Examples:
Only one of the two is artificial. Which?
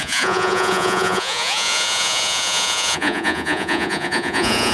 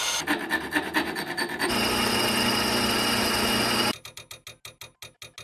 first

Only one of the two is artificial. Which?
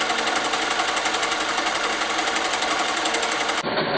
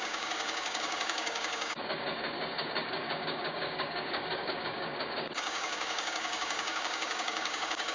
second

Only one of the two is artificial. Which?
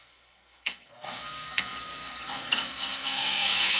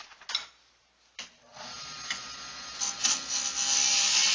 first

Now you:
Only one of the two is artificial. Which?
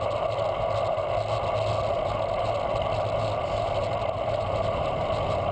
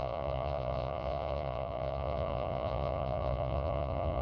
second